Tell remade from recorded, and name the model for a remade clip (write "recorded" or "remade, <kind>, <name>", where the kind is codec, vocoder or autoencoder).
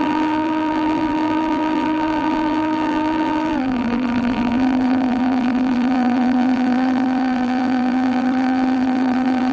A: remade, vocoder, BigVGAN v2